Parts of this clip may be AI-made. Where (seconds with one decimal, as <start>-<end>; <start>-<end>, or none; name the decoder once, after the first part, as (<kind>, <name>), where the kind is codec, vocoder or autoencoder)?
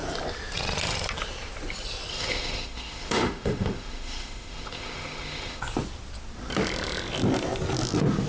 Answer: 2.1-5.6 (autoencoder, DAC-VAE)